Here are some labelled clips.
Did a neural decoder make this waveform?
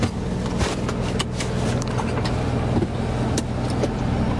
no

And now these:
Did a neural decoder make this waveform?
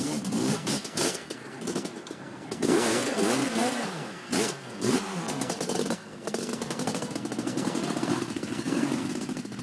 yes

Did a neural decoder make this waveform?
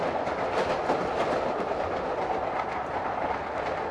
no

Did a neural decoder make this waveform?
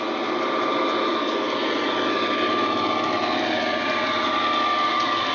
no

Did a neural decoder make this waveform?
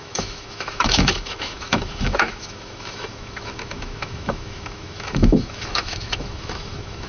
yes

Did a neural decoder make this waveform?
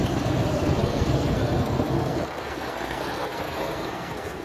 yes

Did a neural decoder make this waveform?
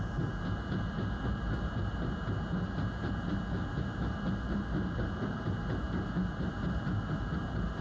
no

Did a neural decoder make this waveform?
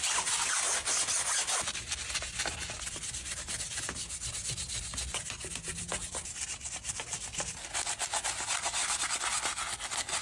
no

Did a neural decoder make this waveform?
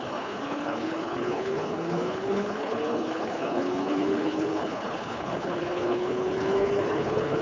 yes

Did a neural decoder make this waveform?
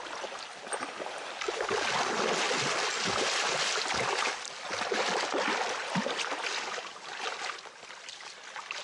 no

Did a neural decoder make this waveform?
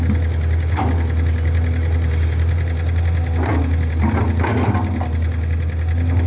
no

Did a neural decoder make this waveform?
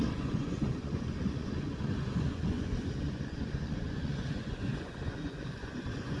yes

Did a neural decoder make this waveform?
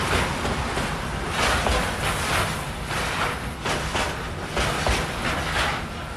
no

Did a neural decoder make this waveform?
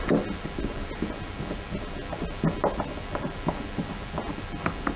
yes